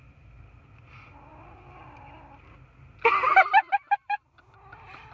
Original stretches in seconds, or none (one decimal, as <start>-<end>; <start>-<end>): 0.0-5.1